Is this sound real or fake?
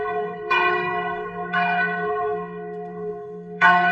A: fake